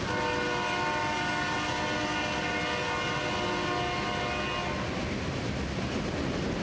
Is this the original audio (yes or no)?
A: yes